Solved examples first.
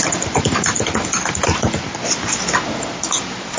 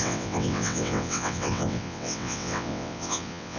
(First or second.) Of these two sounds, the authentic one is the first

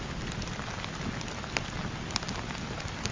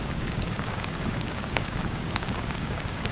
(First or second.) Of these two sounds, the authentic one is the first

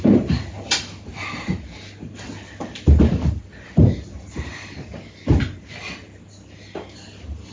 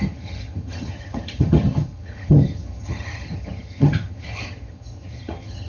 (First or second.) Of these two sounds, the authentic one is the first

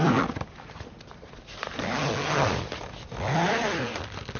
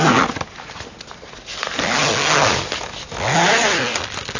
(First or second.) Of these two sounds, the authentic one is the second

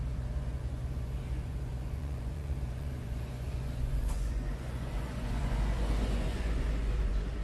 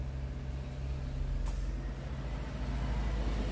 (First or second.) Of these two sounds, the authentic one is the second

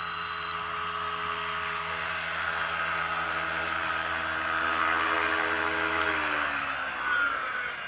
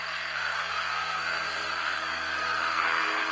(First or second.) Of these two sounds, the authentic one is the first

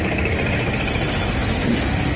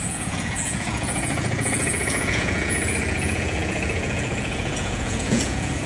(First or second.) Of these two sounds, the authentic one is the first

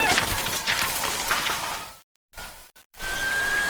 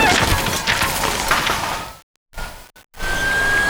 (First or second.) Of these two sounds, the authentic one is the second